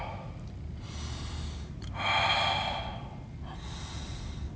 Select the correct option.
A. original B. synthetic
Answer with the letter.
A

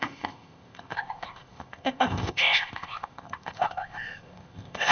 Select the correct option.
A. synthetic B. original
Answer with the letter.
A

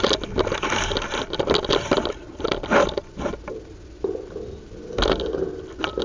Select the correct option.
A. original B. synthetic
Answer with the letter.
A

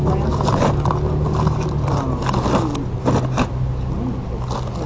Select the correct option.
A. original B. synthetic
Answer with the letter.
A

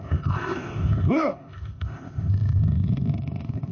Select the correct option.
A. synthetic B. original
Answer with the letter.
A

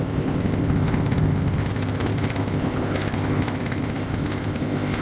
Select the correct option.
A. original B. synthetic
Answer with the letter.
B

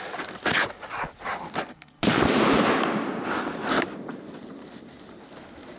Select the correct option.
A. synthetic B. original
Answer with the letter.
B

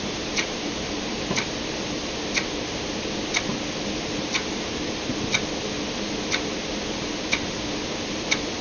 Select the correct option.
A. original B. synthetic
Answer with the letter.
A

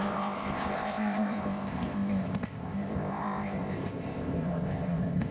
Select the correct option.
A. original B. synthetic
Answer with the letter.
B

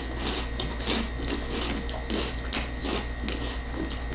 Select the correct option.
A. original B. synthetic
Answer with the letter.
A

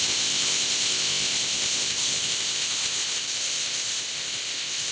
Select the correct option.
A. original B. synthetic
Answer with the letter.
B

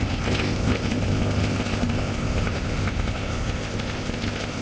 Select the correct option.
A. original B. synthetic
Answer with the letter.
B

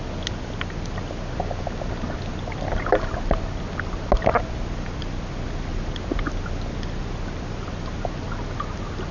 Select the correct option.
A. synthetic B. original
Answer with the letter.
B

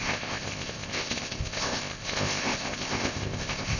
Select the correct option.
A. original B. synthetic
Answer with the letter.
B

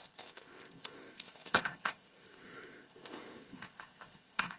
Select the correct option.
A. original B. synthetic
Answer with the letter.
B